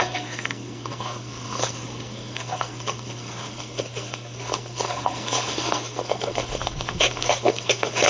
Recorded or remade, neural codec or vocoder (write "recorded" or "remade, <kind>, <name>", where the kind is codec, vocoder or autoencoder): remade, codec, SNAC